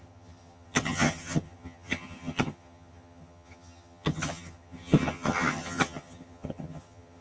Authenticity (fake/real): fake